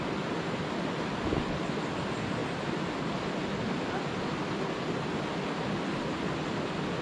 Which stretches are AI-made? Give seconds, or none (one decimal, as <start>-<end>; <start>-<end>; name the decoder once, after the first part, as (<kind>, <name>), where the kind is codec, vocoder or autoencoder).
none